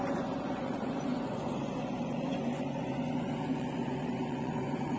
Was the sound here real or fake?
fake